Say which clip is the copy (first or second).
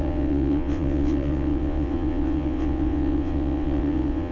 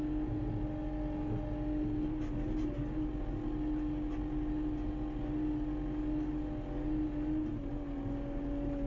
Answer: first